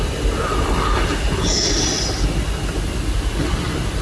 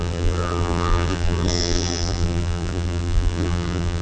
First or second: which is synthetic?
second